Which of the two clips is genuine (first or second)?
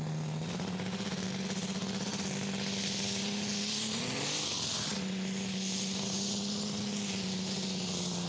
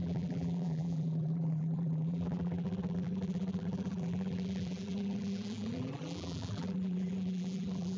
first